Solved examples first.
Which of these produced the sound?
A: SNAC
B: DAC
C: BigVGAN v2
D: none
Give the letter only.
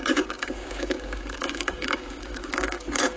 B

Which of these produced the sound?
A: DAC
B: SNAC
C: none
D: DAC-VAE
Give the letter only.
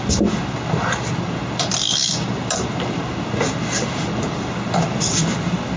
C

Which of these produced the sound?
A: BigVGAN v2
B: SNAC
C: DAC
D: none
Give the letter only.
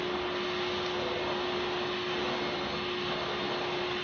D